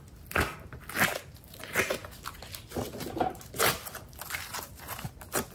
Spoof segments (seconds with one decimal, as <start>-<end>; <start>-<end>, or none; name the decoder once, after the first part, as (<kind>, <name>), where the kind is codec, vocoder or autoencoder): none